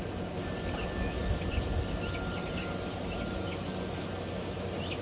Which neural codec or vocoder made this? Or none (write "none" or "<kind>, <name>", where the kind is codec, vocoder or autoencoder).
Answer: none